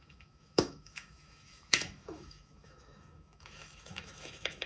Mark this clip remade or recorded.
remade